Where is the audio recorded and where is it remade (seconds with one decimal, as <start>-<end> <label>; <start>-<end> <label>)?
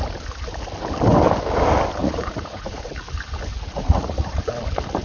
0.0-2.0 recorded; 2.0-2.9 remade; 2.9-3.5 recorded; 3.5-4.4 remade; 4.4-5.0 recorded